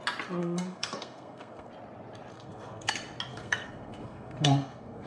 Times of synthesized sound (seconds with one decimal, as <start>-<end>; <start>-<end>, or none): 0.4-1.7; 2.3-2.9; 3.3-5.1

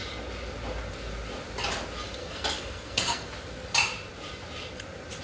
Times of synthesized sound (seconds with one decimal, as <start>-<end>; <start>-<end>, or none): 2.2-3.3

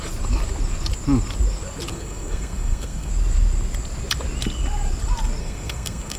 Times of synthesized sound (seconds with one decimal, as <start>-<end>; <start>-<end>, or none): 1.9-3.1; 5.4-6.2

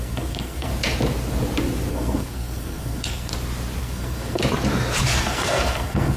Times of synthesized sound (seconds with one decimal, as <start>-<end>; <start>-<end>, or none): 0.0-0.7; 1.9-3.3; 3.8-4.4; 5.2-6.2